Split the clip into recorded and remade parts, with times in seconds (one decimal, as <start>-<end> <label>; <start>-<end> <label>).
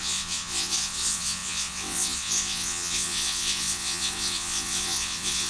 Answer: 0.0-5.5 remade